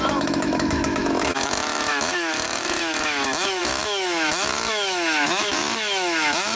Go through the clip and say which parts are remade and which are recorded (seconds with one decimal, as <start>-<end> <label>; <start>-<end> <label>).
0.0-6.6 remade